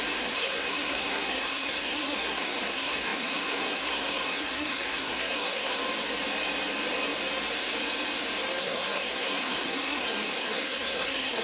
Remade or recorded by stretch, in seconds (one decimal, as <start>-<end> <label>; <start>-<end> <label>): 0.0-5.8 remade; 5.8-8.6 recorded; 8.6-11.4 remade